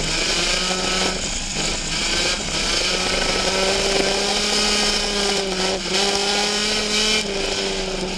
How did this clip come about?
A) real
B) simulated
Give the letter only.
A